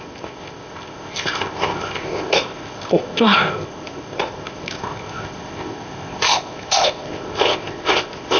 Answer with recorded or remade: remade